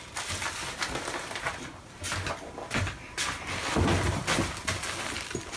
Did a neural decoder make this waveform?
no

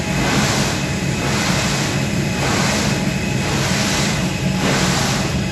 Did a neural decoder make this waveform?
no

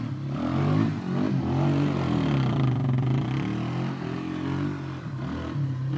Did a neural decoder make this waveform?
no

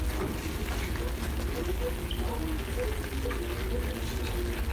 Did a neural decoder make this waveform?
no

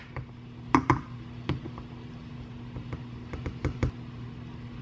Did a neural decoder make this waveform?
no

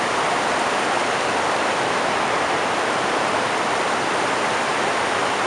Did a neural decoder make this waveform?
no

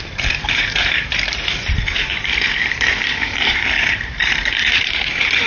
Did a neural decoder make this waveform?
yes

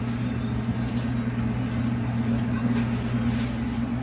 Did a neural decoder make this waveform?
no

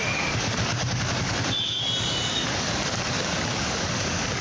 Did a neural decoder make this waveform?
yes